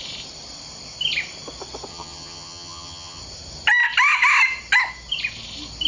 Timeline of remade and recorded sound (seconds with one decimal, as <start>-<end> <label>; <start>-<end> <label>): 0.0-1.9 recorded; 1.9-3.2 remade; 3.2-5.9 recorded